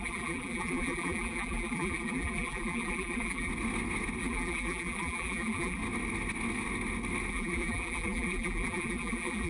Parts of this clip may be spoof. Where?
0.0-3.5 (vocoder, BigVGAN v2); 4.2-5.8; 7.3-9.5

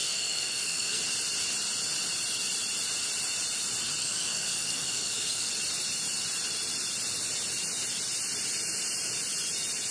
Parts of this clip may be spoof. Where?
0.0-1.0 (codec, SNAC); 4.0-5.5

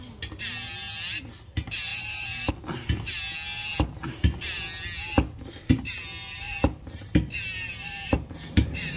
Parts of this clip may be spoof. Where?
1.9-2.5 (vocoder, BigVGAN v2); 6.2-9.0

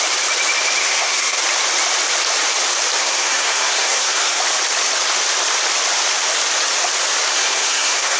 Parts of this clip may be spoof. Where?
0.8-1.4 (codec, SNAC); 3.0-4.4; 7.3-8.2

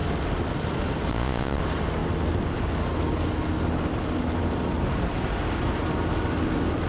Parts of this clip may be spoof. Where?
1.1-1.6 (vocoder, Vocos)

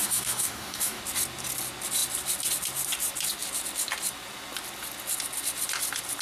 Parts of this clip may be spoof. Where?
0.0-1.0 (codec, DAC)